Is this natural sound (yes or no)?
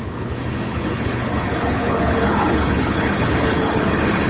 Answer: no